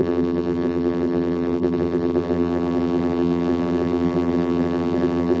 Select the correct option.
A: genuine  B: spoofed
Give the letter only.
B